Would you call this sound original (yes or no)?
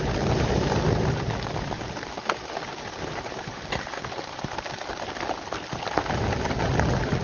yes